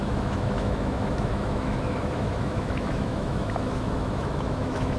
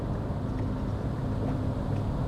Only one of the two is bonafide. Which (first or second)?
second